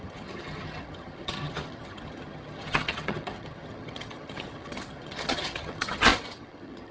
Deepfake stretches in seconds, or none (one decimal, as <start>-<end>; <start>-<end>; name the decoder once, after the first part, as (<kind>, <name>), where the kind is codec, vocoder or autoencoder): 0.0-6.9 (vocoder, HiFi-GAN)